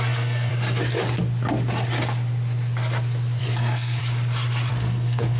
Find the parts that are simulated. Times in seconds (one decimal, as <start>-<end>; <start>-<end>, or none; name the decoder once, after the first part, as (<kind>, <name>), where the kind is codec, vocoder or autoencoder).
0.0-0.5 (codec, SNAC); 3.4-4.0; 4.7-5.4